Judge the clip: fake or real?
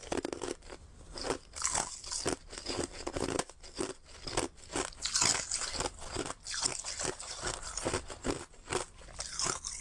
real